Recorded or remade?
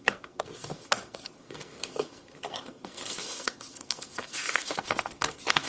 remade